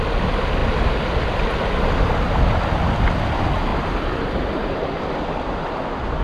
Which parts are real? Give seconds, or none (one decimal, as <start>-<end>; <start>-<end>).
0.0-6.2